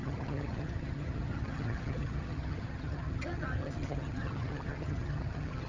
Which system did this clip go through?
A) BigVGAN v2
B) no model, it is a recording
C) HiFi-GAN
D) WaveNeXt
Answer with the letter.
C